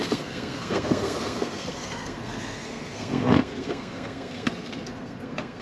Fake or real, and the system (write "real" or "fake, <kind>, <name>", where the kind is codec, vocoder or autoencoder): fake, codec, SNAC